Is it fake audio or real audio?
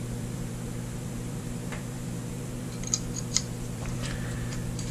fake